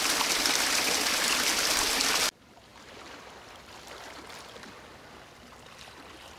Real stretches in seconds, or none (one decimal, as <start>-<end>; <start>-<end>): 0.0-6.4